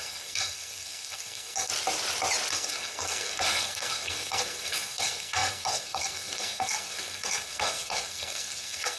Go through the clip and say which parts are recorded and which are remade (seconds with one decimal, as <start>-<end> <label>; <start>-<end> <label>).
0.0-1.7 remade; 1.7-2.5 recorded; 2.5-9.0 remade